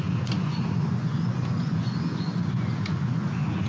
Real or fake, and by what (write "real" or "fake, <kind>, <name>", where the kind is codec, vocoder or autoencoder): fake, vocoder, Vocos